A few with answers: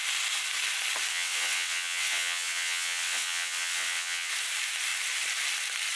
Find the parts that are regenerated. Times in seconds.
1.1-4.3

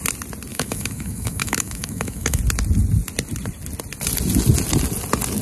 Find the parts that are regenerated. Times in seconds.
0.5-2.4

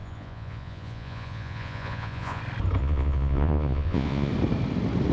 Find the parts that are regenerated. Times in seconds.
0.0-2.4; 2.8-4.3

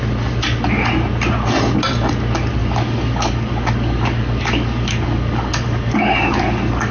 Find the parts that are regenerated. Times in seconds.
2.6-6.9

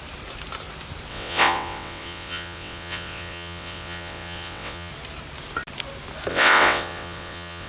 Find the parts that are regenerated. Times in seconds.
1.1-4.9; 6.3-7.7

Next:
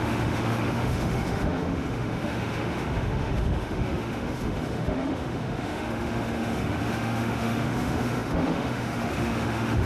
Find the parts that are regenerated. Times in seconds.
0.0-9.9

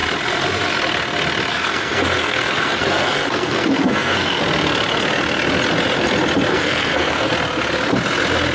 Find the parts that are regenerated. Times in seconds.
1.5-4.4; 6.5-7.3